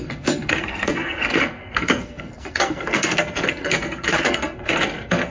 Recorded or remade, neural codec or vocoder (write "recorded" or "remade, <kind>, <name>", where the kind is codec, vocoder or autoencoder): remade, codec, SNAC